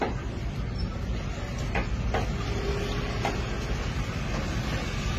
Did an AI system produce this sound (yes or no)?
no